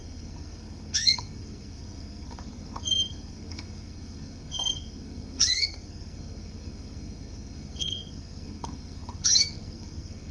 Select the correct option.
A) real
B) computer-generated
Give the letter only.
B